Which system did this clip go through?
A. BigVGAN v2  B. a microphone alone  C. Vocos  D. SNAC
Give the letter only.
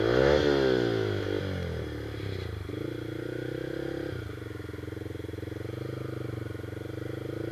B